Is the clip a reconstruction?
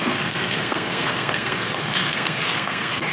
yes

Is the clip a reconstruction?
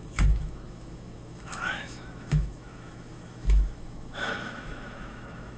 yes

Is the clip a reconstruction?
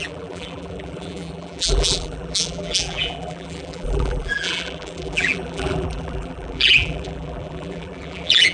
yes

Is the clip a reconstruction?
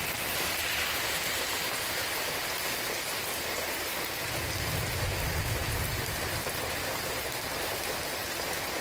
no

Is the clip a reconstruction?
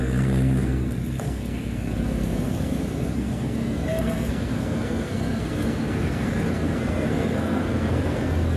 yes